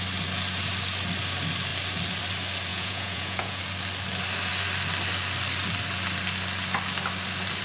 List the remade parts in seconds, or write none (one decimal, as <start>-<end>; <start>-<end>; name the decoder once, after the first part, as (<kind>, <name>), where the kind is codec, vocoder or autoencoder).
2.7-3.6 (vocoder, Vocos)